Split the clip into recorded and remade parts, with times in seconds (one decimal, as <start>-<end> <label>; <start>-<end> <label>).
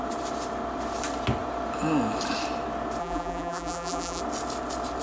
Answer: 0.0-3.0 recorded; 3.0-4.2 remade; 4.2-5.0 recorded